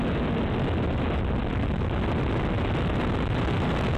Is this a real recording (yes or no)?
yes